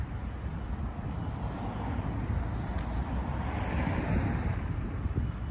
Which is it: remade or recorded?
recorded